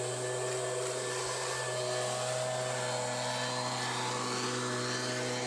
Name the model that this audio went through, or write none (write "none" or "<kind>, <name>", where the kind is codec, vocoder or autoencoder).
none